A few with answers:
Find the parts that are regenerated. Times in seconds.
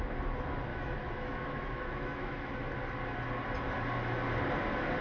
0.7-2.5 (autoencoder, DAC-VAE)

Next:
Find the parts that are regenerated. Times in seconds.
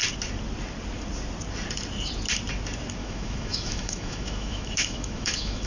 3.0-5.7 (autoencoder, DAC-VAE)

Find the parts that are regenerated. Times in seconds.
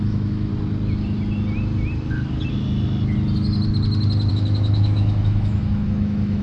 0.0-0.5 (autoencoder, DAC-VAE); 4.3-6.4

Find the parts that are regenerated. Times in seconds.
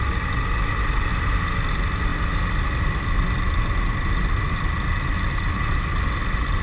none